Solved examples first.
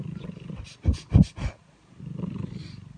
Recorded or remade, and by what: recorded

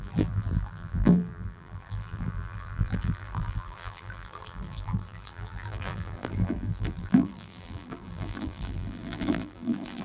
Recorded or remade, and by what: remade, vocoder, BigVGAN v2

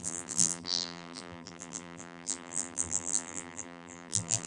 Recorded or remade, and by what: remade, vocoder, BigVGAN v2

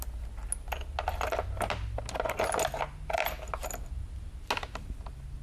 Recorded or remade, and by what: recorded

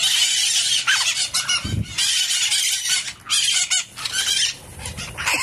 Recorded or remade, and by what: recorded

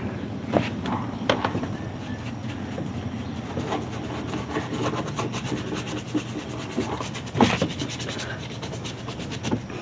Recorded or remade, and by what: recorded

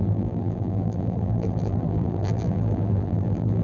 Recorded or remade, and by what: remade, vocoder, BigVGAN v2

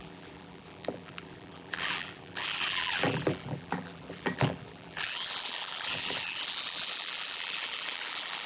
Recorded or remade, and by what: remade, vocoder, BigVGAN v2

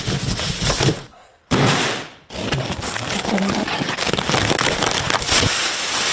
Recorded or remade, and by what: recorded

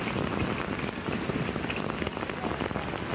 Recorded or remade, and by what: recorded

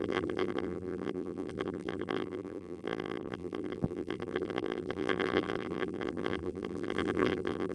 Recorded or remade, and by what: remade, vocoder, BigVGAN v2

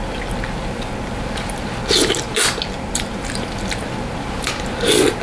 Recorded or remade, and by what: recorded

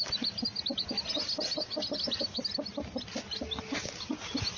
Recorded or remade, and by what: recorded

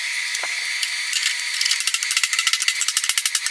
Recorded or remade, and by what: recorded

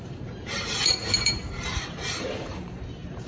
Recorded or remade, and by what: remade, vocoder, BigVGAN v2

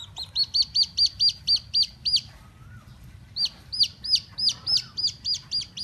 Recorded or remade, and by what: recorded